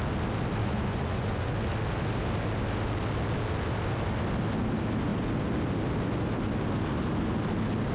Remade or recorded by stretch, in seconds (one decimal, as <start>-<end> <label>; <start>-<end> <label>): 0.0-0.6 recorded; 0.6-1.5 remade; 1.5-7.9 recorded